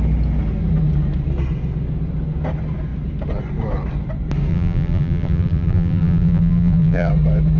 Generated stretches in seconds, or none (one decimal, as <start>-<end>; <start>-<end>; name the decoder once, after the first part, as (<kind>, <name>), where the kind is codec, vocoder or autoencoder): 4.5-7.1 (vocoder, BigVGAN v2)